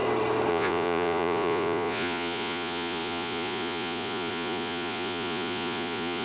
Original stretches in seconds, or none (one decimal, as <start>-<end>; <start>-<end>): 0.0-0.5